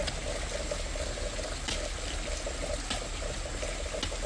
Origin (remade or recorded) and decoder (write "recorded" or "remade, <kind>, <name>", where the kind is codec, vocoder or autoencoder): recorded